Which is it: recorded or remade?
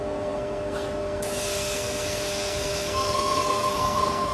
remade